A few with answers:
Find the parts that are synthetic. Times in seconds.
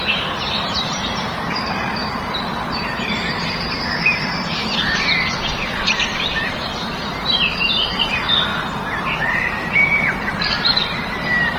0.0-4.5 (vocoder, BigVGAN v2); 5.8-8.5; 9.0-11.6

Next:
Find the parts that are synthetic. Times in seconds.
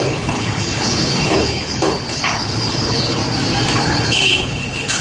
0.0-3.2 (codec, HILCodec); 3.8-5.0